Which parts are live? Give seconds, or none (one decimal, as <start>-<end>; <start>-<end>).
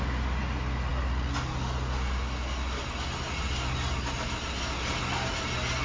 0.0-5.8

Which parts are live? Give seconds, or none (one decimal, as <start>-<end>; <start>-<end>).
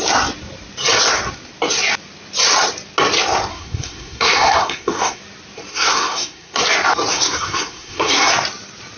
0.0-3.5; 5.2-5.7; 6.6-7.1; 8.3-9.0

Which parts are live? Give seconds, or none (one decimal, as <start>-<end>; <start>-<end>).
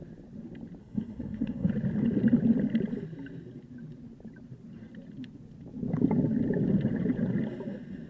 0.0-0.8; 1.7-8.1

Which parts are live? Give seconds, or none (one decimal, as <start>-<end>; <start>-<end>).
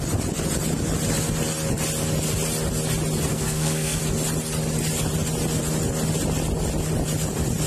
0.0-3.3; 4.0-7.7